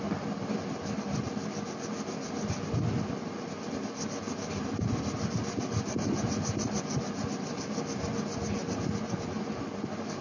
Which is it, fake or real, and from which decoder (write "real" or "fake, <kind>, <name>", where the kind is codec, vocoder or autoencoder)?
real